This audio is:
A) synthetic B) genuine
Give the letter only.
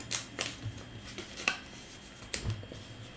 B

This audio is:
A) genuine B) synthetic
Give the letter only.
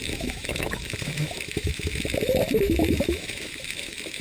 B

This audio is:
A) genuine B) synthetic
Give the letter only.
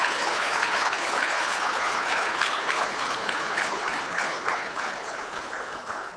B